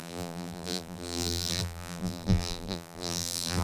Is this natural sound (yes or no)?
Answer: no